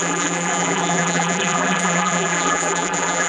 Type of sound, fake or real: fake